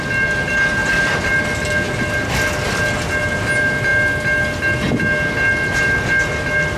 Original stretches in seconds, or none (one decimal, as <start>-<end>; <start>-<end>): 0.0-6.8